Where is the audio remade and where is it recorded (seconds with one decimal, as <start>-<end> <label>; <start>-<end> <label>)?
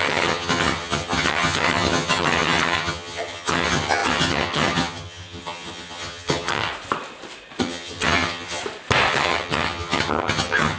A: 0.0-6.7 remade; 6.7-7.6 recorded; 7.6-8.6 remade; 8.6-9.1 recorded; 9.1-10.8 remade